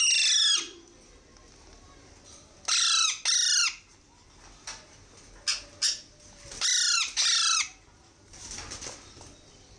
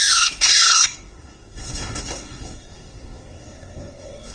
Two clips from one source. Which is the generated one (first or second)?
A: second